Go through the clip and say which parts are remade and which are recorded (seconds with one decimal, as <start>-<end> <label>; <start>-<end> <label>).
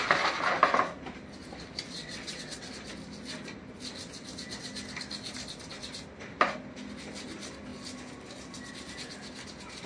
0.0-2.0 recorded; 2.0-2.7 remade; 2.7-9.9 recorded